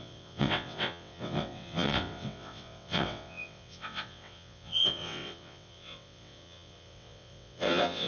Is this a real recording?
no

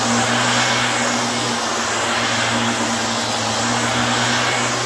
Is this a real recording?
yes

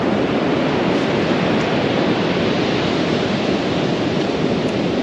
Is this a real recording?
yes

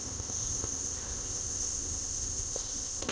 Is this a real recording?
no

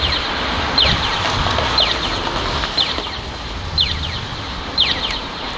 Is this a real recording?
yes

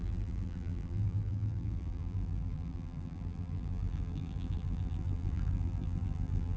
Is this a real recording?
no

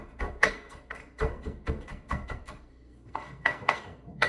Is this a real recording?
no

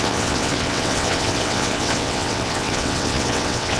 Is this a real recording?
no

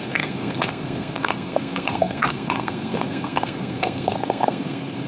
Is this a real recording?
no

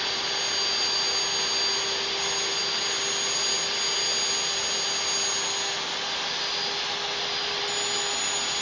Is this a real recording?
yes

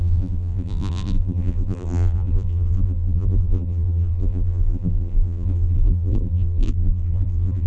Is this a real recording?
no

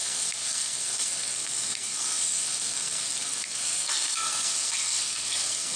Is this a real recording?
no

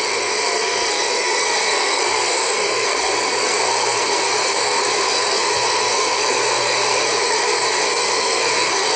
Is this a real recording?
no